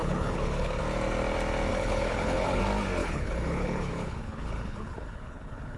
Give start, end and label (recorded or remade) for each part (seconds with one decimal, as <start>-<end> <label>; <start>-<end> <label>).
0.0-0.8 remade; 0.8-1.7 recorded; 1.7-2.6 remade; 2.6-3.0 recorded; 3.0-5.8 remade